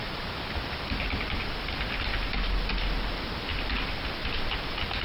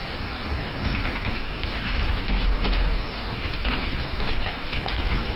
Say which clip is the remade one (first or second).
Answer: second